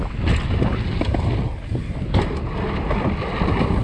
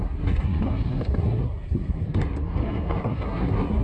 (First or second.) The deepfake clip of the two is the second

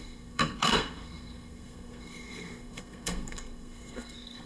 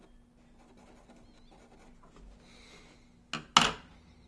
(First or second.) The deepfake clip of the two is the first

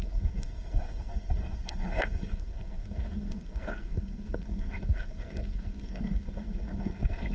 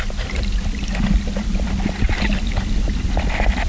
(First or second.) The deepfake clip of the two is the first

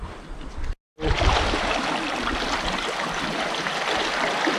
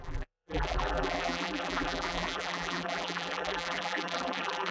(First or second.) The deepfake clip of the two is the second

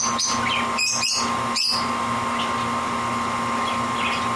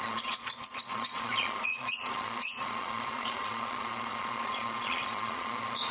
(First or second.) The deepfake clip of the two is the second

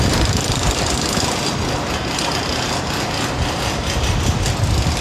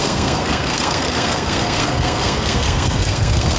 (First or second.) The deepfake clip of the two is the second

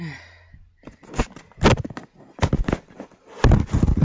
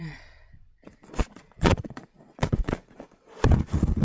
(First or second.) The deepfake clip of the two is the second